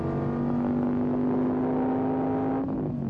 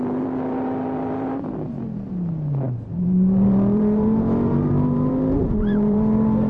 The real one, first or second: first